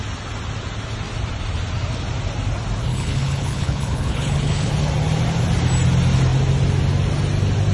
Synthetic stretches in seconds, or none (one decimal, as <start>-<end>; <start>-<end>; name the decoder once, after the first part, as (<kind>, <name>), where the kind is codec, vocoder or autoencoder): 2.9-4.7 (codec, HILCodec)